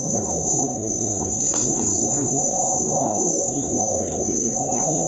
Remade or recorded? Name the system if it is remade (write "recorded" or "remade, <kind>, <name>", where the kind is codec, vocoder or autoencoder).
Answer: remade, codec, SNAC